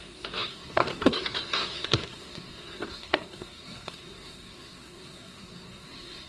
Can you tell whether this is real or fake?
fake